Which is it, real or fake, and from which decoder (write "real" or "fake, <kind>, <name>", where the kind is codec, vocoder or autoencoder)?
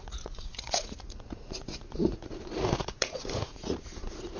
fake, vocoder, Vocos